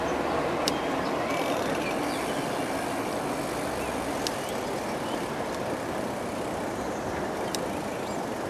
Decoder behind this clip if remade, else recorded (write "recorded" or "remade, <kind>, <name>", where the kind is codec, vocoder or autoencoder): recorded